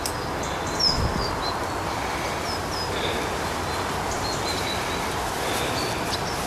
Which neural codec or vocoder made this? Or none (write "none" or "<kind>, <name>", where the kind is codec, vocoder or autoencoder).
none